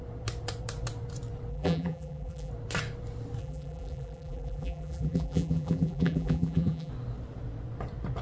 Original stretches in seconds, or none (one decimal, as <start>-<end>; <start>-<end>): 0.0-1.5; 2.5-3.4; 6.9-8.2